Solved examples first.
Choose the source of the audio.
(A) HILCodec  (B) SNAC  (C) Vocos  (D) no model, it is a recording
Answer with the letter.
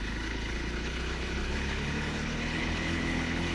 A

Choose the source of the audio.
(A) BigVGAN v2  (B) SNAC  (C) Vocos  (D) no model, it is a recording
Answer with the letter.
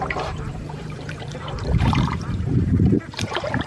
A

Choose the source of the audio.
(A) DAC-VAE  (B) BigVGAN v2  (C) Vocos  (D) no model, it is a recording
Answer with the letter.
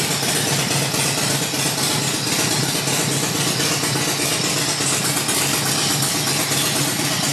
D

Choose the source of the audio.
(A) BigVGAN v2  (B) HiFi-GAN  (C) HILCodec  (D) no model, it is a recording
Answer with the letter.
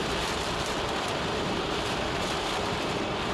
A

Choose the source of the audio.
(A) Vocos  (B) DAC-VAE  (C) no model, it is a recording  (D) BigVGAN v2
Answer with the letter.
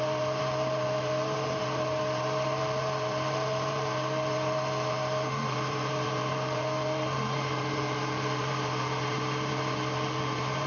D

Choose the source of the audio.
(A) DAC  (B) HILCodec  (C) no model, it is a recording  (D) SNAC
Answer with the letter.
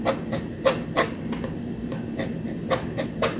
C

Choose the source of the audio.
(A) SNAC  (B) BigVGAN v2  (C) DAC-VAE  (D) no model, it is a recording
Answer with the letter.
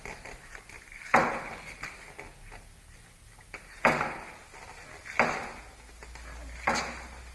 D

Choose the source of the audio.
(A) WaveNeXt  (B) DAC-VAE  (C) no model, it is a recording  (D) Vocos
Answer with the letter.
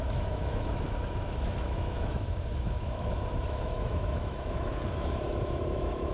B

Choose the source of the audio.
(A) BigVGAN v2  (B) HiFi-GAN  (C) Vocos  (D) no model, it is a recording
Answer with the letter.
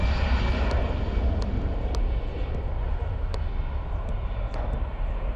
D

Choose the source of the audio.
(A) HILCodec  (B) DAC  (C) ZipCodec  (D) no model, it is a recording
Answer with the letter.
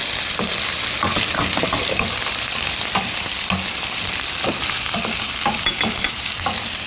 D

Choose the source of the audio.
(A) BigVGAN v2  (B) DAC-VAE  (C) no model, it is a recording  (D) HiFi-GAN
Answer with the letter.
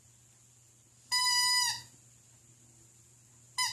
C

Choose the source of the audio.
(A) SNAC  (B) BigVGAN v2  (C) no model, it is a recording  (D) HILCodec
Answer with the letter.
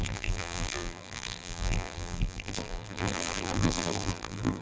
B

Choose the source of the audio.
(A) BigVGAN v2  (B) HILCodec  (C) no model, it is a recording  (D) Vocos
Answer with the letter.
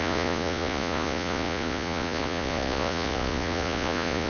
D